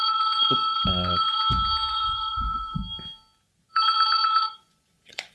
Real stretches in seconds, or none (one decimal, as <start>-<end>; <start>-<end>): 1.4-1.9; 2.8-3.7